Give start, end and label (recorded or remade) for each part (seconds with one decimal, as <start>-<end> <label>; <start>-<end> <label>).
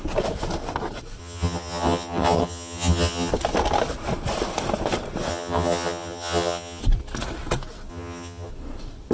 0.0-1.2 recorded; 1.2-3.3 remade; 3.3-5.3 recorded; 5.3-6.8 remade; 6.8-7.9 recorded; 7.9-8.5 remade; 8.5-9.1 recorded